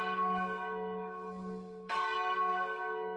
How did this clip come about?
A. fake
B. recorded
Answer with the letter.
A